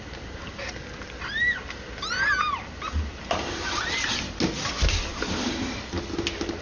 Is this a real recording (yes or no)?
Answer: yes